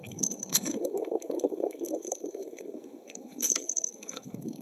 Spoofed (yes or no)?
yes